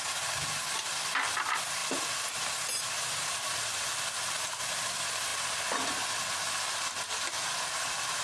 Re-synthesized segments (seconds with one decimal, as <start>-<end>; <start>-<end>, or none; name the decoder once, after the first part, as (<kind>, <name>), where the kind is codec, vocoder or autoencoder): none